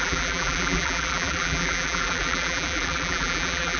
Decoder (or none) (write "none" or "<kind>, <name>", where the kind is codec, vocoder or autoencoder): vocoder, BigVGAN v2